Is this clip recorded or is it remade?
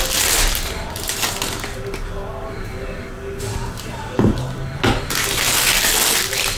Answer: recorded